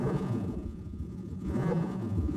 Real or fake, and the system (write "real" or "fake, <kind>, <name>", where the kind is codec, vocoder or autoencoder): fake, vocoder, Vocos